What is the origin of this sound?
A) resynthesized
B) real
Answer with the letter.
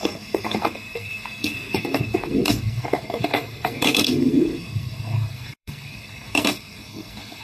A